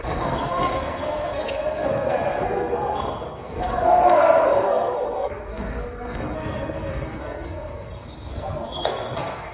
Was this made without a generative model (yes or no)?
no